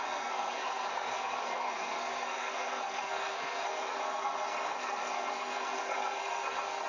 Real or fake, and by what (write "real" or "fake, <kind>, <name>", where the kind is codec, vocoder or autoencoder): fake, codec, SNAC